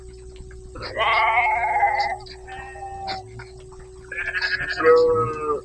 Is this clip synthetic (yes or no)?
no